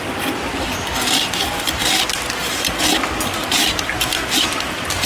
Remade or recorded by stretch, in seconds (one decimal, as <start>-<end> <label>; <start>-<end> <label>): 0.0-5.1 recorded